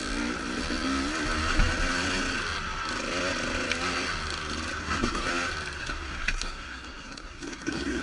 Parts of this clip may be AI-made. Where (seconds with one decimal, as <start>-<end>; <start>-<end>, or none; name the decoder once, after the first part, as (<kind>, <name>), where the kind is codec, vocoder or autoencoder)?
4.8-5.3 (codec, SNAC); 5.8-8.0